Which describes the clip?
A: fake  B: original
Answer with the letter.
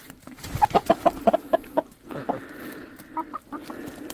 B